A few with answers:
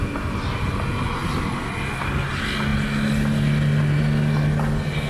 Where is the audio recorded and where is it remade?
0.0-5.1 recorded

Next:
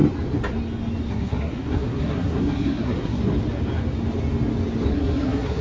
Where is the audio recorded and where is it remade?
0.0-1.1 recorded; 1.1-3.2 remade; 3.2-4.9 recorded; 4.9-5.6 remade

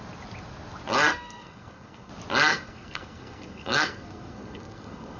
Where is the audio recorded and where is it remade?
0.0-1.1 recorded; 1.1-2.1 remade; 2.1-2.5 recorded; 2.5-5.2 remade

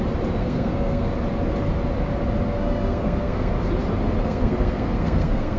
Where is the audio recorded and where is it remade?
0.0-0.4 recorded; 0.4-1.1 remade; 1.1-2.6 recorded; 2.6-3.5 remade; 3.5-4.2 recorded; 4.2-5.6 remade

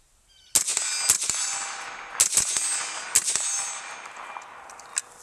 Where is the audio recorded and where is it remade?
0.0-5.2 recorded

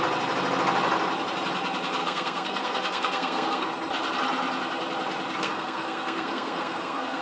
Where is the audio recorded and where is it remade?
0.0-2.0 recorded; 2.0-3.7 remade; 3.7-5.4 recorded; 5.4-7.2 remade

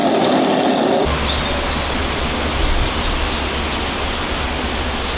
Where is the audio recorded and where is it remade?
0.0-5.2 recorded

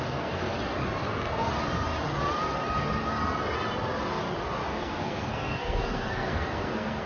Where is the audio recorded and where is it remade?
0.0-0.4 remade; 0.4-4.7 recorded; 4.7-7.1 remade